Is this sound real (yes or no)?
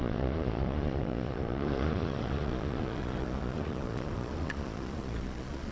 no